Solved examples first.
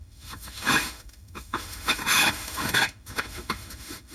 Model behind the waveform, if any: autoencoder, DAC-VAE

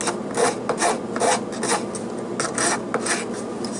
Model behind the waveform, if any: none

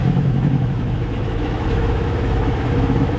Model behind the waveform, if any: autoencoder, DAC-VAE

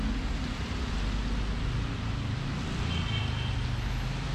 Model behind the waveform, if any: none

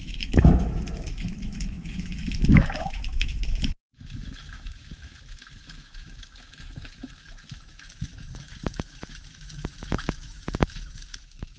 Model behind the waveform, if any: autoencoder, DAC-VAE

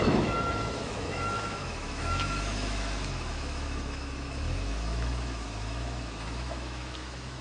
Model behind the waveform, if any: autoencoder, DAC-VAE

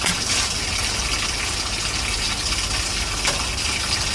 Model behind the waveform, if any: none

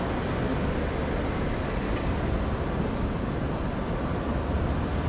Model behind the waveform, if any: none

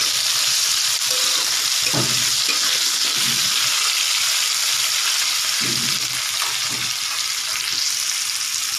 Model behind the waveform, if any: none